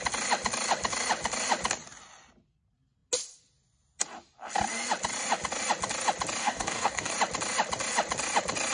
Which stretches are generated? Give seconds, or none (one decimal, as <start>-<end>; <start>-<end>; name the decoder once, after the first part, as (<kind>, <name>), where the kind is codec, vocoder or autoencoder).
6.4-7.1 (codec, DAC)